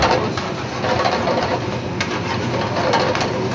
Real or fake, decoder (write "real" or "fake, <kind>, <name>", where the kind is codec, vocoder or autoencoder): real